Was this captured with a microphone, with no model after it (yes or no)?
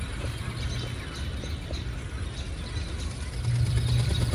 yes